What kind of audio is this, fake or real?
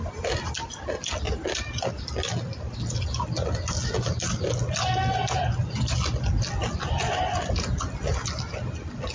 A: real